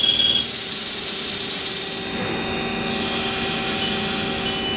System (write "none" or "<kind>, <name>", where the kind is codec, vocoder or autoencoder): none